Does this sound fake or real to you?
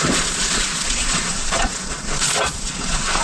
fake